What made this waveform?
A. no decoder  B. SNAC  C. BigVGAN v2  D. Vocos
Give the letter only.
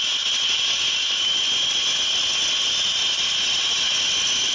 A